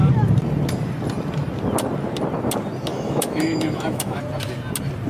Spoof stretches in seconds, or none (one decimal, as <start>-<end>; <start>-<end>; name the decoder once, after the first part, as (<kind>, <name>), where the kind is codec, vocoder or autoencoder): 2.9-4.2 (autoencoder, DAC-VAE)